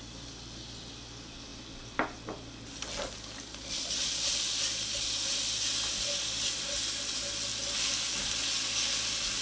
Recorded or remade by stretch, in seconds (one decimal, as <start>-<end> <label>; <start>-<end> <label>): 0.0-9.4 recorded